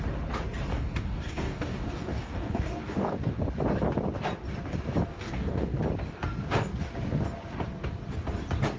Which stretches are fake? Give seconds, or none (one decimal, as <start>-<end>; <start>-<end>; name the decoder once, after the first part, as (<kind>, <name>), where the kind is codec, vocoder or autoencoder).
0.7-3.2 (codec, DAC); 5.1-5.8